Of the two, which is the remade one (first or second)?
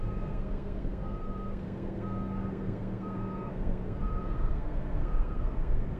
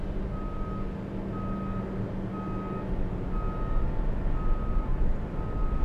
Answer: first